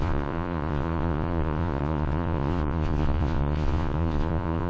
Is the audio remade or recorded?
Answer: remade